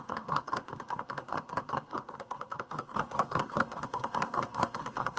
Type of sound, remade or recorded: remade